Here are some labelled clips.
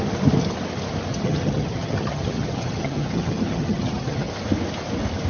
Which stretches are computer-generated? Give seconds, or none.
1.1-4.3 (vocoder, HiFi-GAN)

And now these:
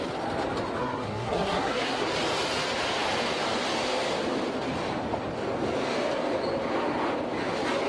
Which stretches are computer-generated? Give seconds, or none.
0.8-2.0 (codec, SNAC)